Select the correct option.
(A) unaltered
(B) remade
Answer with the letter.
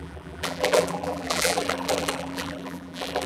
B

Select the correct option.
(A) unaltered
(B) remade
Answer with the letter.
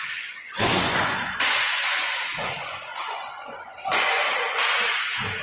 B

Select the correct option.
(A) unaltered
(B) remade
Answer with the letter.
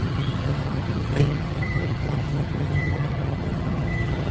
B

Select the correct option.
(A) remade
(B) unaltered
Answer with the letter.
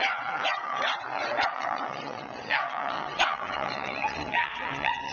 A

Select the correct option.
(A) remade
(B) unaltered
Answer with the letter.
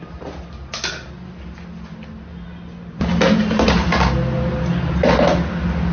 B